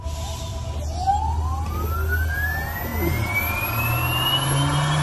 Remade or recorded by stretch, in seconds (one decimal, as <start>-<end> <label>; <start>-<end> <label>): 0.0-5.0 recorded